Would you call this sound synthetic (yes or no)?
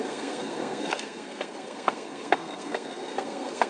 yes